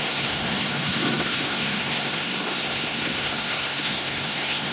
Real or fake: fake